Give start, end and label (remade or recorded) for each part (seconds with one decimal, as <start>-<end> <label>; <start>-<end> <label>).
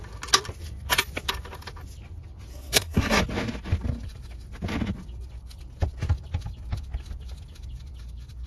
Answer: 0.0-2.5 recorded; 2.5-3.2 remade; 3.2-8.5 recorded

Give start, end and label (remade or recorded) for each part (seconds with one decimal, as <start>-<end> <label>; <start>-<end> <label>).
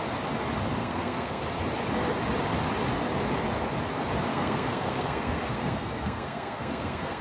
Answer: 0.0-0.8 recorded; 0.8-1.4 remade; 1.4-4.3 recorded; 4.3-7.2 remade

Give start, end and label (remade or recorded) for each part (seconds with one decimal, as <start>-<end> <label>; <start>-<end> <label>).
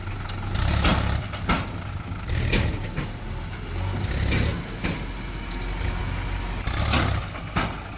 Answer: 0.0-8.0 recorded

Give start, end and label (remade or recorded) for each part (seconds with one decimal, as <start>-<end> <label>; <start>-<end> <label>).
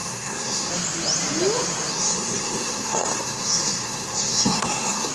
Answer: 0.0-0.7 remade; 0.7-1.9 recorded; 1.9-5.1 remade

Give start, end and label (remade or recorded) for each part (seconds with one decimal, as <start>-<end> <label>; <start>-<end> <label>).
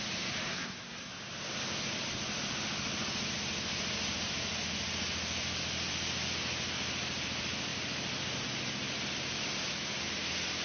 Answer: 0.0-0.5 recorded; 0.5-1.1 remade; 1.1-10.6 recorded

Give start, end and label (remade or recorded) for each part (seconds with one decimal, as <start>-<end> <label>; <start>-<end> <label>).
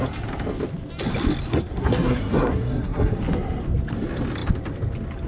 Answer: 0.0-1.5 recorded; 1.5-3.2 remade; 3.2-5.3 recorded